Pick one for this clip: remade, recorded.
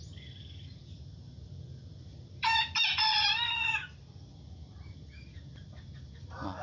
recorded